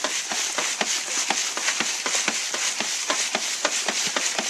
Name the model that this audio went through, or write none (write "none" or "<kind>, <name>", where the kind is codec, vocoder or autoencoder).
none